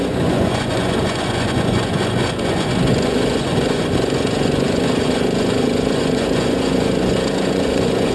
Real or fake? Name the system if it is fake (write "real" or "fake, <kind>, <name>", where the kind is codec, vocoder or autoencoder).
fake, vocoder, Vocos